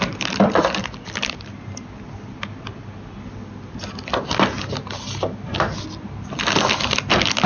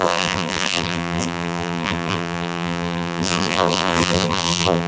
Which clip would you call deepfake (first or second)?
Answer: second